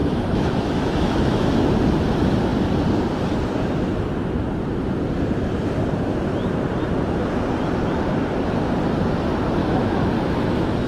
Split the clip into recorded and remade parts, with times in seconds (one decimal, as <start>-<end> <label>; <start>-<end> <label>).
0.0-1.5 remade; 1.5-9.6 recorded; 9.6-10.1 remade; 10.1-10.9 recorded